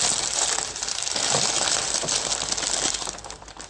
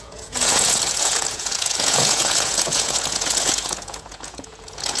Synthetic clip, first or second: second